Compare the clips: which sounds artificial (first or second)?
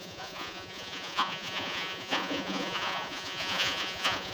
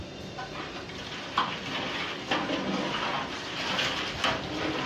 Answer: first